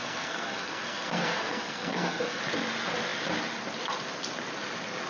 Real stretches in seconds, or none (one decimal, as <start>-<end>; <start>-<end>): 2.4-5.1

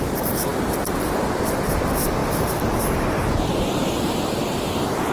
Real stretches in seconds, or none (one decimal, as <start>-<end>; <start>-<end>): 2.2-3.5

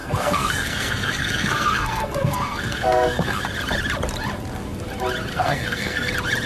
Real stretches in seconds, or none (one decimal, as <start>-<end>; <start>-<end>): 3.4-5.3; 6.1-6.5

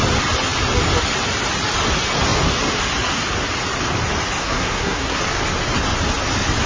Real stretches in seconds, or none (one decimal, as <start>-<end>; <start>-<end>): 0.0-4.4; 5.2-6.7

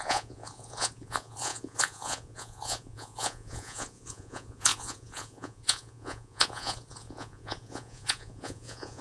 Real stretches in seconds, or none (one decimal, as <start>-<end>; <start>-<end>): none

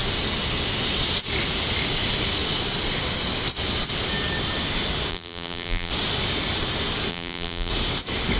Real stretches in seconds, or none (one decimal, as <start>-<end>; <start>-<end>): 0.0-5.1; 5.9-7.1; 7.7-8.4

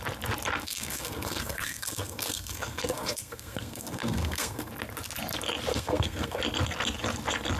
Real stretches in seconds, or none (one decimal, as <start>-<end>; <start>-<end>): 0.0-0.6; 4.7-5.7; 6.4-7.6